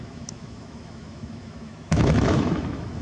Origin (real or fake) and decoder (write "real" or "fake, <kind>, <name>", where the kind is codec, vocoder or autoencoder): fake, autoencoder, DAC-VAE